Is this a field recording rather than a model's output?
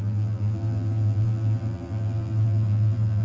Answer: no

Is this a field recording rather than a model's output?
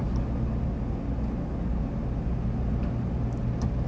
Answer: yes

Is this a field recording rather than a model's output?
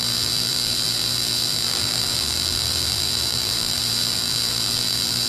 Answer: no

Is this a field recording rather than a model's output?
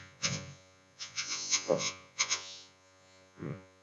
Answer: no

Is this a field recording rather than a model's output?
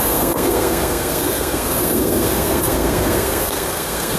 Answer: no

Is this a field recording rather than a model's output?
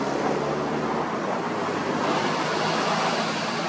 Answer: yes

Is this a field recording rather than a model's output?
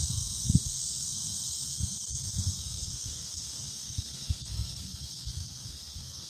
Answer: no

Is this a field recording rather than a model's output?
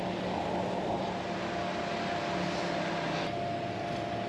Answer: yes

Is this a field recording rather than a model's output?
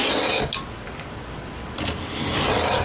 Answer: yes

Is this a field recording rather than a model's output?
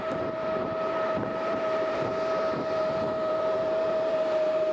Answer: no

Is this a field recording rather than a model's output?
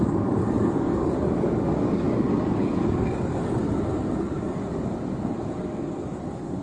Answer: no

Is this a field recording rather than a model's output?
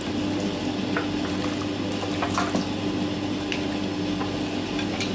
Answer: yes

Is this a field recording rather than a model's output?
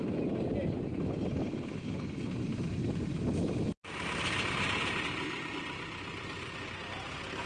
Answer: yes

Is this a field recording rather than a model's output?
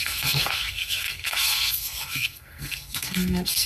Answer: no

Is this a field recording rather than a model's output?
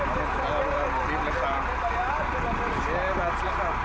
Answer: yes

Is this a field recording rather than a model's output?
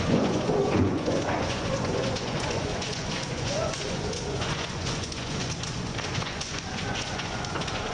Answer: no